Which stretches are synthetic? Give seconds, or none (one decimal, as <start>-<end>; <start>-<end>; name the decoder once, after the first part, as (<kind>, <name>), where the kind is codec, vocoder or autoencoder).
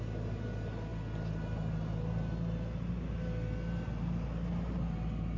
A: none